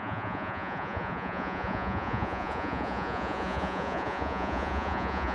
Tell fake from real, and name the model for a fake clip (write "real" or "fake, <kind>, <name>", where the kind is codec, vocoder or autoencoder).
fake, vocoder, Vocos